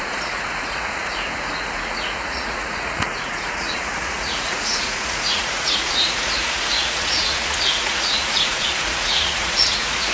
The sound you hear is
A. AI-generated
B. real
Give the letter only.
A